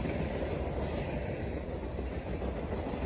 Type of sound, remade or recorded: recorded